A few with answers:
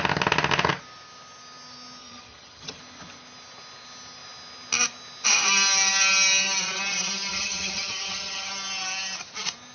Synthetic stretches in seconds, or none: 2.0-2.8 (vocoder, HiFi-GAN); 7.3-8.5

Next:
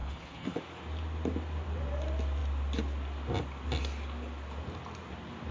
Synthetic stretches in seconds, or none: 0.0-0.6 (codec, HILCodec)